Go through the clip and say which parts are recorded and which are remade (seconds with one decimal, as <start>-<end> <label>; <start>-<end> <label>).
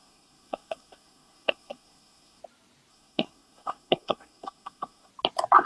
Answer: 0.0-2.4 remade; 2.4-2.9 recorded; 2.9-5.1 remade; 5.1-5.7 recorded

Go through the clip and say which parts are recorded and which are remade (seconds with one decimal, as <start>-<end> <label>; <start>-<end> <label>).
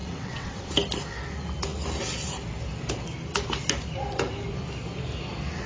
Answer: 0.0-0.7 remade; 0.7-5.7 recorded